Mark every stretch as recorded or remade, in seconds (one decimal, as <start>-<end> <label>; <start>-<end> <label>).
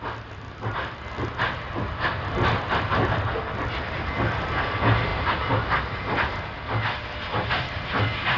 0.0-8.4 recorded